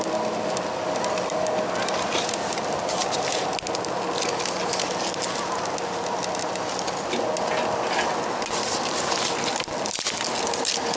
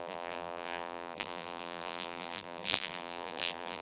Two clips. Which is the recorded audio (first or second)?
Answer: first